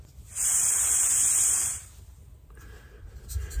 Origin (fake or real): real